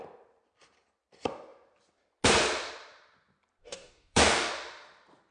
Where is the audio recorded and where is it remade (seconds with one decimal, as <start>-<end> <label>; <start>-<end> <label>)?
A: 0.0-3.6 recorded; 3.6-4.5 remade; 4.5-5.3 recorded